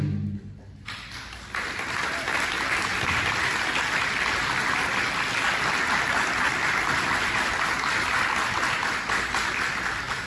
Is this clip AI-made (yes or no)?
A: no